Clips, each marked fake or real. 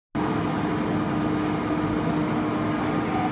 real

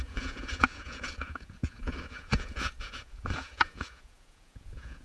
fake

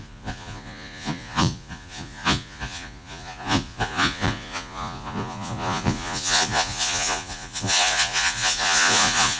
fake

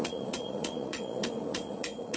fake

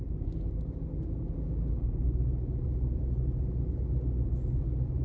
real